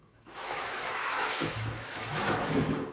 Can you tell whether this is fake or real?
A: fake